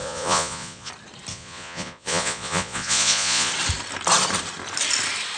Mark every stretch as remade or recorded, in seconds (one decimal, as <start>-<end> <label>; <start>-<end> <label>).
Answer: 0.0-0.9 remade; 0.9-1.3 recorded; 1.3-3.5 remade; 3.5-5.4 recorded